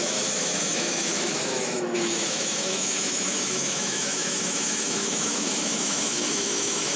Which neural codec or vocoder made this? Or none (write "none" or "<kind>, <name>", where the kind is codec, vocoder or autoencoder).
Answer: autoencoder, DAC-VAE